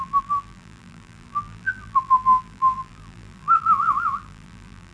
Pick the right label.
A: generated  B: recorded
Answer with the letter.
A